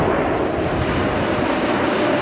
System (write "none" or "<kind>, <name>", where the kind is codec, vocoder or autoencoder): none